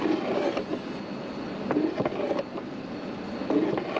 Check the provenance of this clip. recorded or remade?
recorded